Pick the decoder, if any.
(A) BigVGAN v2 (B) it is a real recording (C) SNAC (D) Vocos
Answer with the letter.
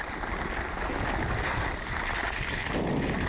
B